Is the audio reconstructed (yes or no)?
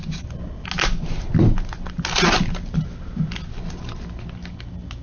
no